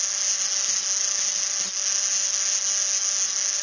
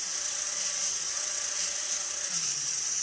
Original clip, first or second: first